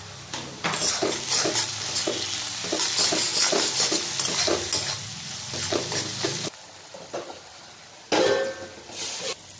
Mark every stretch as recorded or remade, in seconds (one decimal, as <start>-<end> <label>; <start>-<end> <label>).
0.0-9.6 recorded